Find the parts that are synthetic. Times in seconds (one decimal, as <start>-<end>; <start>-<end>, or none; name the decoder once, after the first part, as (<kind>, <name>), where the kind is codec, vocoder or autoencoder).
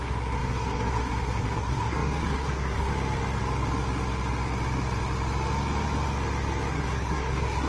0.0-2.9 (codec, SNAC); 6.7-7.7